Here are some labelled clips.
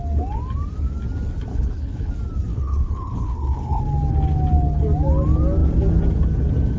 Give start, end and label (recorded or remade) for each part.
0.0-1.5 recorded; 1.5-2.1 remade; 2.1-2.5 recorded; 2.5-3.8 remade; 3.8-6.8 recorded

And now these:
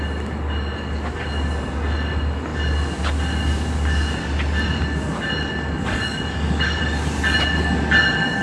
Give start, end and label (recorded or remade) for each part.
0.0-5.9 recorded; 5.9-6.8 remade; 6.8-8.4 recorded

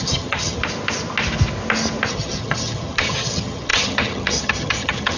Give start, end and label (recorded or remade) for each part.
0.0-0.6 remade; 0.6-2.1 recorded; 2.1-5.2 remade

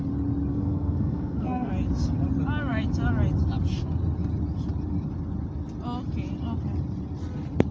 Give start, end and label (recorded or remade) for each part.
0.0-0.5 recorded; 0.5-1.7 remade; 1.7-7.7 recorded